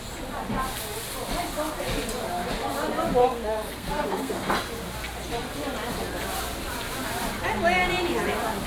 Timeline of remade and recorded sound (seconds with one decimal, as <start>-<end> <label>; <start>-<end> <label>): 0.0-3.2 recorded; 3.2-4.5 remade; 4.5-8.7 recorded